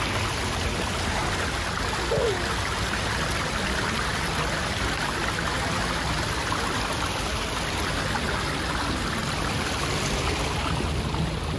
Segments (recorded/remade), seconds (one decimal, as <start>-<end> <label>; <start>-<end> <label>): 0.0-11.6 recorded